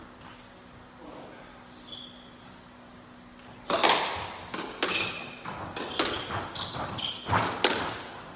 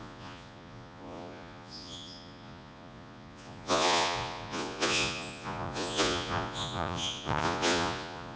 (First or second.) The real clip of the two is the first